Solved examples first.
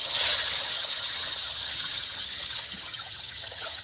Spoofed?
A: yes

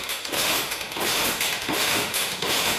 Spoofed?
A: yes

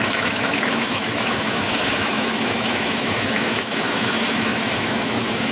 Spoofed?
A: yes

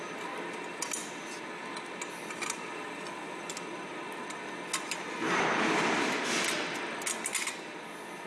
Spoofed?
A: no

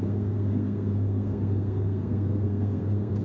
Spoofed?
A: yes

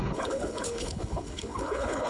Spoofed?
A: yes